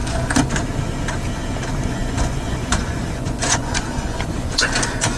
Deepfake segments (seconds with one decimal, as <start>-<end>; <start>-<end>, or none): 0.0-0.6; 1.9-5.2